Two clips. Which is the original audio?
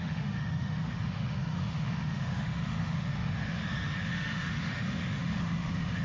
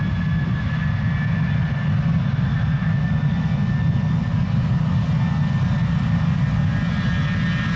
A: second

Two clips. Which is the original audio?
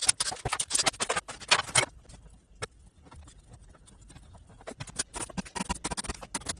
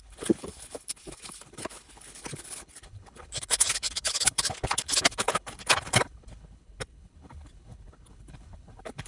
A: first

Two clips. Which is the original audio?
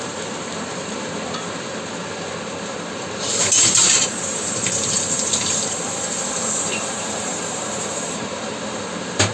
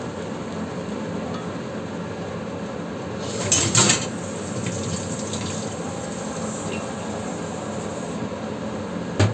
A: second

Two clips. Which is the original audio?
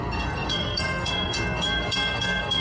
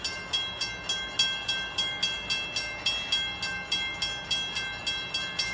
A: second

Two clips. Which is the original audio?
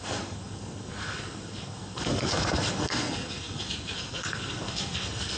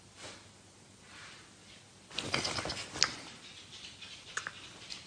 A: second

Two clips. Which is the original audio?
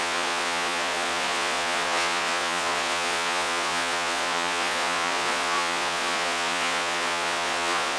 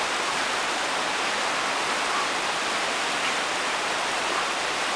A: second